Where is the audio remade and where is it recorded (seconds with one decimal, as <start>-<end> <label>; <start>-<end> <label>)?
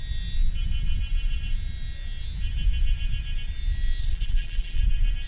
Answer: 0.0-4.0 recorded; 4.0-4.8 remade; 4.8-5.3 recorded